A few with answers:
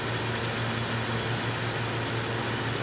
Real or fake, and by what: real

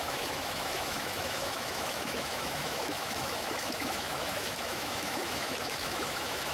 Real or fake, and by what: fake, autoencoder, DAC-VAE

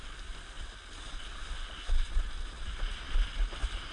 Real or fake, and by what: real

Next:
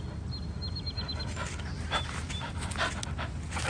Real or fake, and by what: real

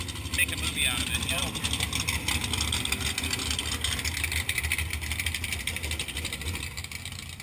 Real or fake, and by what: real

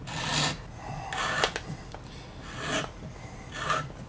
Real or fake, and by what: real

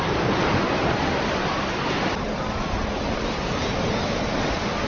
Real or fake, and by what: real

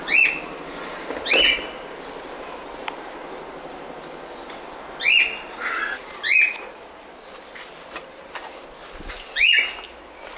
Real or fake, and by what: real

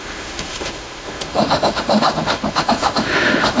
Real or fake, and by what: fake, autoencoder, DAC-VAE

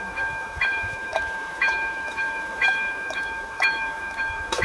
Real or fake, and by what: fake, autoencoder, DAC-VAE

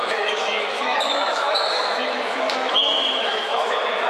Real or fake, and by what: fake, autoencoder, DAC-VAE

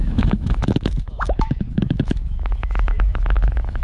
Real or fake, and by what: fake, autoencoder, DAC-VAE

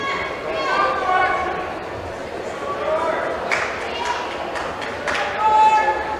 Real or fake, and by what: real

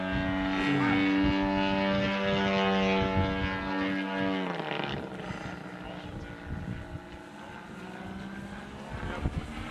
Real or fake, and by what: real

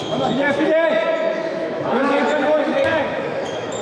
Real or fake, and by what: fake, autoencoder, DAC-VAE